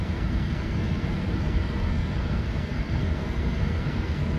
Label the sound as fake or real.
fake